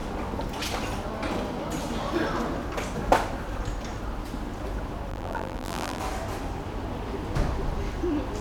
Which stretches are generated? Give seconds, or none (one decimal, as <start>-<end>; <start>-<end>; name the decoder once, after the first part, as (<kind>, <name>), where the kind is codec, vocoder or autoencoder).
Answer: 5.1-6.0 (vocoder, BigVGAN v2)